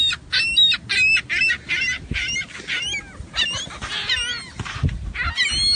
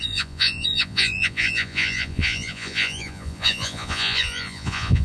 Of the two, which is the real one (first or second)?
first